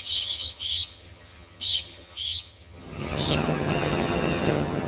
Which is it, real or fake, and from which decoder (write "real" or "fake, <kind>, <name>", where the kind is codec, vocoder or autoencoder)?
fake, vocoder, HiFi-GAN